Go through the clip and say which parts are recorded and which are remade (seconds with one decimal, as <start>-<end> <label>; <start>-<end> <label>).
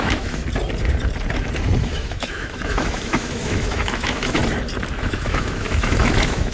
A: 0.0-0.4 remade; 0.4-1.8 recorded; 1.8-4.4 remade; 4.4-5.0 recorded; 5.0-6.5 remade